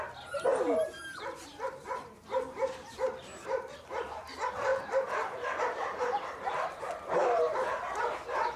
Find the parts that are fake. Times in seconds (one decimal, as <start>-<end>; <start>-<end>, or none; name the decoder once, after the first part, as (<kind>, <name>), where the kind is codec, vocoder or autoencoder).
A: 0.5-3.0 (vocoder, BigVGAN v2); 4.7-6.8; 7.2-7.8